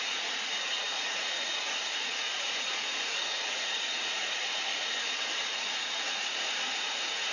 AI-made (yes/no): yes